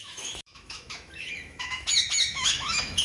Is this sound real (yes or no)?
no